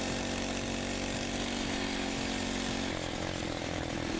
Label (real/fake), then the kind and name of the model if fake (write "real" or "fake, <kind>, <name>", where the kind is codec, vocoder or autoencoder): real